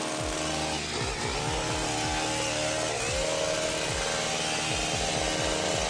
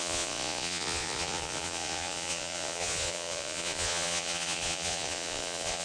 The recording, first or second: first